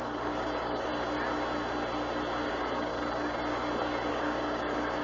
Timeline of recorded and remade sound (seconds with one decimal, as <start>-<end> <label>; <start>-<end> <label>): 0.0-0.9 remade; 0.9-2.5 recorded; 2.5-2.9 remade; 2.9-4.1 recorded; 4.1-5.0 remade